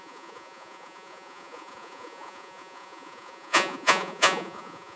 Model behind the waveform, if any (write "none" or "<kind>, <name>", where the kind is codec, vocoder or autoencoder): vocoder, Vocos